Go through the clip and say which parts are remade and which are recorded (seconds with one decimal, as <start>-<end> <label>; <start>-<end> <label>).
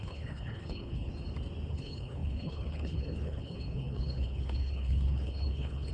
0.0-1.1 remade; 1.1-1.7 recorded; 1.7-5.9 remade